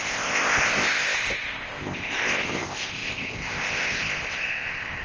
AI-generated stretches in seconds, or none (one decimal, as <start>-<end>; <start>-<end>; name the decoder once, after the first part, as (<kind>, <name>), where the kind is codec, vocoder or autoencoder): 0.0-5.0 (codec, ZipCodec)